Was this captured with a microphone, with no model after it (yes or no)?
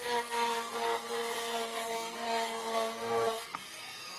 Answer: no